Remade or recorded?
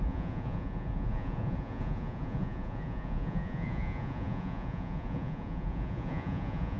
remade